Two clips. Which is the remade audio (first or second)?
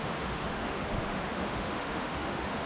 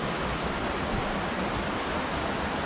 first